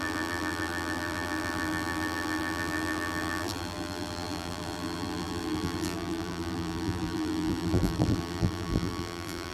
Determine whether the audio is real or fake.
fake